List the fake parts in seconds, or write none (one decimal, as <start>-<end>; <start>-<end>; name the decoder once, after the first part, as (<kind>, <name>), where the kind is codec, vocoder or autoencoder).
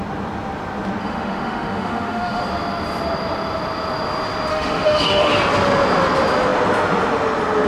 1.0-2.4 (autoencoder, DAC-VAE); 4.5-5.3